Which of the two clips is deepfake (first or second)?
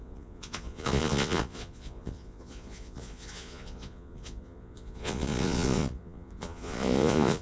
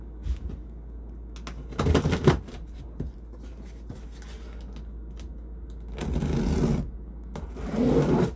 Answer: first